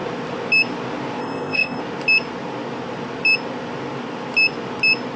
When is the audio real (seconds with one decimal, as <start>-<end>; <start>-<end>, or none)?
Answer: 0.0-1.2; 1.8-5.2

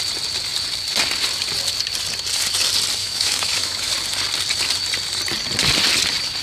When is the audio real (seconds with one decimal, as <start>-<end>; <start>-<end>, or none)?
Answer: 0.0-3.0; 3.9-6.4

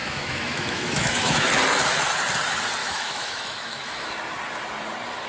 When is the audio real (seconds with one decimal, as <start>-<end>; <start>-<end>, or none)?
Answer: 1.5-2.8; 4.1-5.3

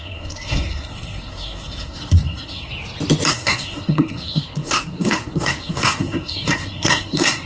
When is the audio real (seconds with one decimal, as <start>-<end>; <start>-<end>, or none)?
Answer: 2.7-3.3

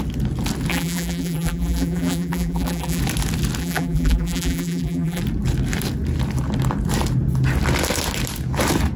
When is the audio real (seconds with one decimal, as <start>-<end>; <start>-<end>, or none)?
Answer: 0.0-0.7; 3.0-3.6; 5.2-9.0

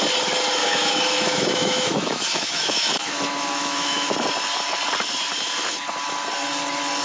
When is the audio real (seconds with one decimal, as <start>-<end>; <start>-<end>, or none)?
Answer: 0.0-0.6; 4.1-7.0

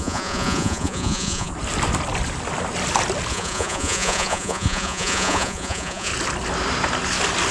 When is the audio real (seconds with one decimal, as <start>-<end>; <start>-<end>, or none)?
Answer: 1.5-3.3; 6.1-7.5

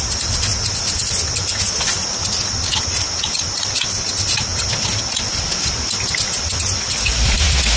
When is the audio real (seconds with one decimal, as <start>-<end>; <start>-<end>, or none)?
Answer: 0.0-7.8